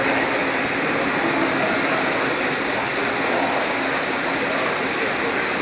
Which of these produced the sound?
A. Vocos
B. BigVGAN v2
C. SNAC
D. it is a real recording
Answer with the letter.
D